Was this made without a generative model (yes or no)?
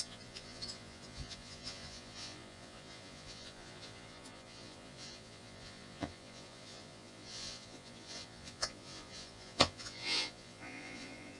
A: no